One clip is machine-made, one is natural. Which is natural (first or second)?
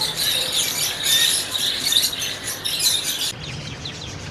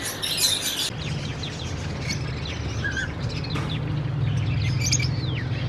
second